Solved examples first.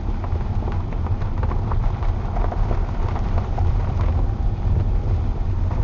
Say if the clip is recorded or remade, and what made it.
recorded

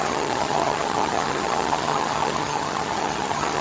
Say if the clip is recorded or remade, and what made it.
remade, vocoder, HiFi-GAN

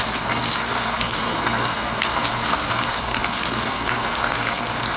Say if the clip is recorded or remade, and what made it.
remade, codec, SNAC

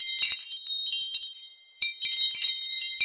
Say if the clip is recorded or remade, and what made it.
remade, vocoder, BigVGAN v2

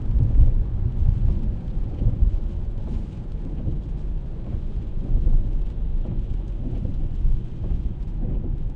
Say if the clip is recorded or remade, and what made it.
remade, vocoder, Vocos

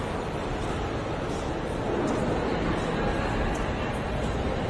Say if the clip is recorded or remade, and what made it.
recorded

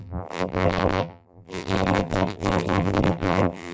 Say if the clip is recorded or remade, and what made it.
remade, vocoder, BigVGAN v2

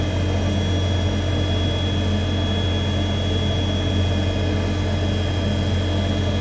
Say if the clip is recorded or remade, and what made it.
recorded